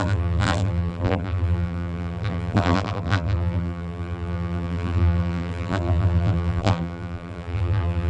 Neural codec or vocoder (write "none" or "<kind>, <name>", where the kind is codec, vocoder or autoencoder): vocoder, BigVGAN v2